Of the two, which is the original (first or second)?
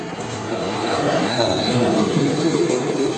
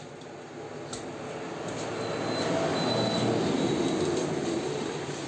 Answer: second